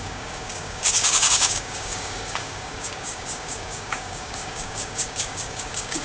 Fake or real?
fake